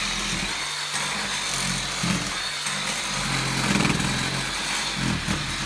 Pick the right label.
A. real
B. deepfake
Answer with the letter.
A